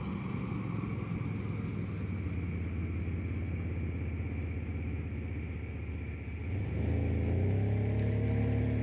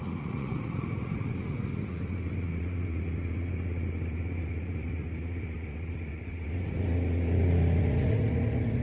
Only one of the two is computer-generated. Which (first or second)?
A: second